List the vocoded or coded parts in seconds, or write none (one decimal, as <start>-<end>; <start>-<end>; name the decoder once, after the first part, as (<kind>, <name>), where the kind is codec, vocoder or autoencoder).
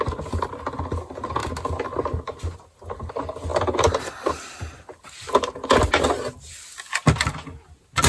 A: none